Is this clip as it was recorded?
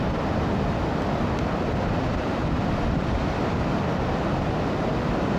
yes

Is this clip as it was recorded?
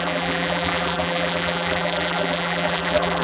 no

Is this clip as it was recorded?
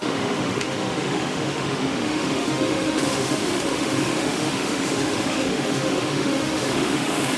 no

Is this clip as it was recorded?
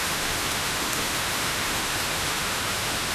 no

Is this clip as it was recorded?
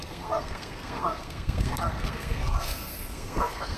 no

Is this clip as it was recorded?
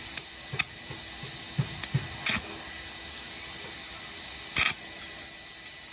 yes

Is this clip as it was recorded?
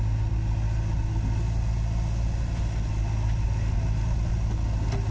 yes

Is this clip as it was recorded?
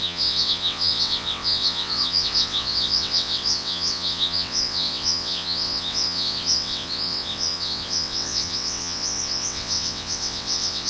no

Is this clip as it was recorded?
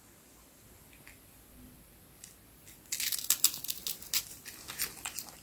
yes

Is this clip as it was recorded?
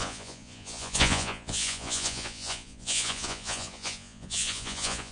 no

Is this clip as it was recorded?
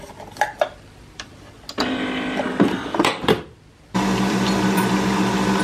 no